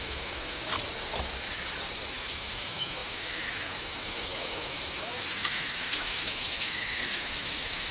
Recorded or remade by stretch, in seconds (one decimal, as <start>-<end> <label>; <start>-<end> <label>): 0.0-0.7 remade; 0.7-2.1 recorded; 2.1-7.9 remade